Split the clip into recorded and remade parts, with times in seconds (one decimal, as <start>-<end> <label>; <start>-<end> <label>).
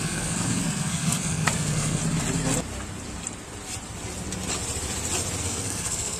0.0-2.0 remade; 2.0-5.4 recorded; 5.4-6.2 remade